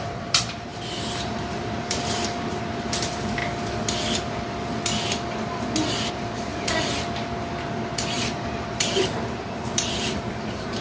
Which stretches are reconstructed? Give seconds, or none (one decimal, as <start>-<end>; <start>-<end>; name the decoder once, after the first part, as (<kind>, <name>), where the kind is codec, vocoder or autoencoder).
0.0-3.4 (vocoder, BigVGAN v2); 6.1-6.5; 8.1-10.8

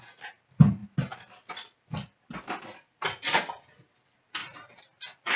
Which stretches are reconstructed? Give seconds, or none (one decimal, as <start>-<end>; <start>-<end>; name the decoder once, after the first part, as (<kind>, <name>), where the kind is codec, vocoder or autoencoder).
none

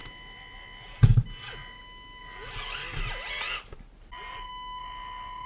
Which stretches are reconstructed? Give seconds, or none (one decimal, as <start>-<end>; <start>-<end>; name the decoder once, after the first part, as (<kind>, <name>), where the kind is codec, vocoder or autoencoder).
none